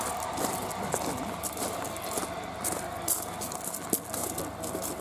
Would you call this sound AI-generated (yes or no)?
no